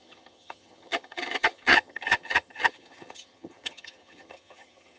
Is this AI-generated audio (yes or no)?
yes